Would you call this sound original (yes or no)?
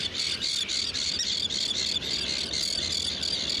yes